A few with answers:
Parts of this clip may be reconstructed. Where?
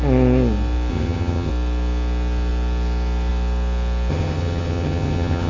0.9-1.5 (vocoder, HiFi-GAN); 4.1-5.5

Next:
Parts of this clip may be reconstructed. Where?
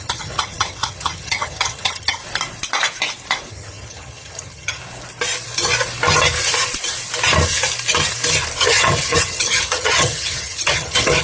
0.0-2.2 (vocoder, HiFi-GAN); 3.5-4.8; 8.6-11.2